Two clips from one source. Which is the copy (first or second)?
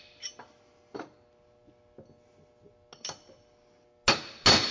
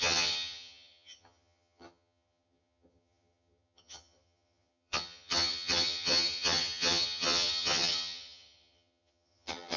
second